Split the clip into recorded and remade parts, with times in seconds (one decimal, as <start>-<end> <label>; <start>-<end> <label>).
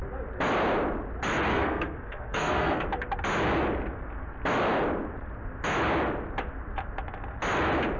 0.0-1.5 recorded; 1.5-2.8 remade; 2.8-8.0 recorded